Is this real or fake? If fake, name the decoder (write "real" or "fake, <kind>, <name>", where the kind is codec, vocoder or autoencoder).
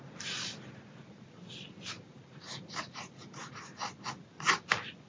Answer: real